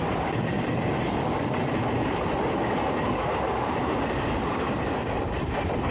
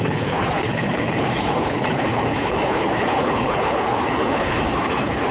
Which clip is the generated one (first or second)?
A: second